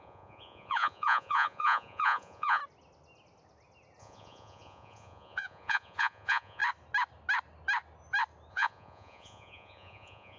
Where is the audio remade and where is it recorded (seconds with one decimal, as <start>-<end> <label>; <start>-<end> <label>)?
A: 0.0-2.6 remade; 2.6-4.0 recorded; 4.0-6.6 remade; 6.6-8.5 recorded; 8.5-10.4 remade